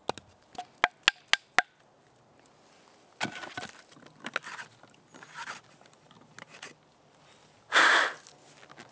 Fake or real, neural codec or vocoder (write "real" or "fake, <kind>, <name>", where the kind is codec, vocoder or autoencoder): real